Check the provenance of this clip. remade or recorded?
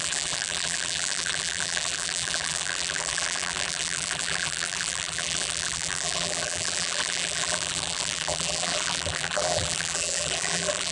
remade